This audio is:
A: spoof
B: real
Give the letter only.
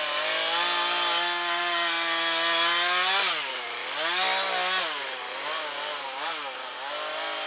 B